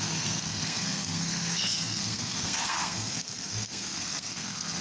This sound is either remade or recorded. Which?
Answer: remade